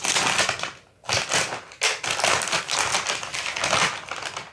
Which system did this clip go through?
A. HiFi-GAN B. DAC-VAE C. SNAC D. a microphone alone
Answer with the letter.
D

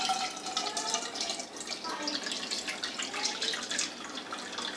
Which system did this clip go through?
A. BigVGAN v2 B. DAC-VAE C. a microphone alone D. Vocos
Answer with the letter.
C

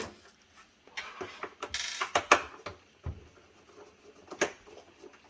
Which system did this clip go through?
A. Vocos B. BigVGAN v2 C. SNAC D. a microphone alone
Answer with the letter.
D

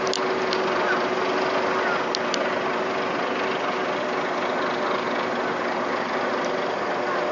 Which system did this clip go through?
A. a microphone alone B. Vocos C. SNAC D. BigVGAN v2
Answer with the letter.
A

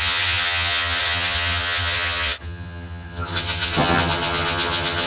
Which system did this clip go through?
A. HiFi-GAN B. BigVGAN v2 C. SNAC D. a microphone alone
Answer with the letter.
A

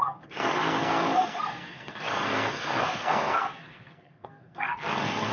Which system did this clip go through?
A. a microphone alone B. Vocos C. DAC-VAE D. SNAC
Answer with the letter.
D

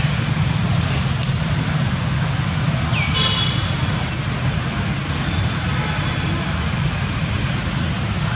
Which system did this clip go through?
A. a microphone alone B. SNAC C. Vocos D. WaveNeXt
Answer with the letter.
A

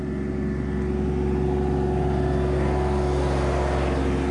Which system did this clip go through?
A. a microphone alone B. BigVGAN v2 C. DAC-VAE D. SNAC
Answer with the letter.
A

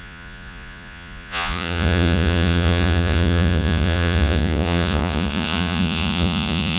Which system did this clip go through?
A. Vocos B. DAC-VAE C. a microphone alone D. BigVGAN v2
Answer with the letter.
A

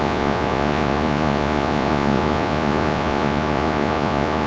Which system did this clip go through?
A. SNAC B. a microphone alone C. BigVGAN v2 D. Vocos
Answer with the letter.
D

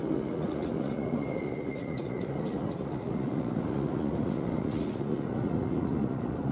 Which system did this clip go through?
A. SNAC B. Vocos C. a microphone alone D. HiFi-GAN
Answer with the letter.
B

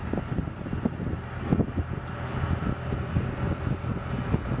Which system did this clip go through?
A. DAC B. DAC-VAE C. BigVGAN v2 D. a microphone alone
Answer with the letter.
D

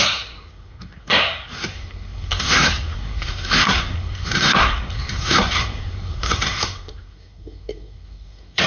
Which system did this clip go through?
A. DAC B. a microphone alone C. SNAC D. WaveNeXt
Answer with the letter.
C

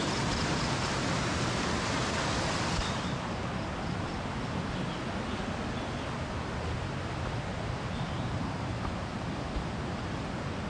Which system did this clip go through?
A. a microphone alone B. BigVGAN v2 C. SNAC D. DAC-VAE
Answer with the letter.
A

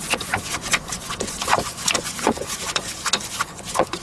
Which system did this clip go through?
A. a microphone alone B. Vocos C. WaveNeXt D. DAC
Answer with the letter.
B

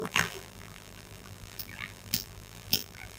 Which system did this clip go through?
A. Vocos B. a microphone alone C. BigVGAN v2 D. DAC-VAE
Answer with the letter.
C